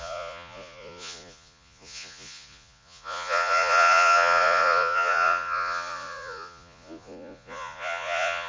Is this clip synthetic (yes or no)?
yes